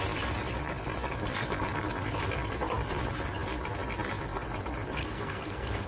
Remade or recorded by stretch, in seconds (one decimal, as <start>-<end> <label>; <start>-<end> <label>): 0.0-5.0 recorded; 5.0-5.9 remade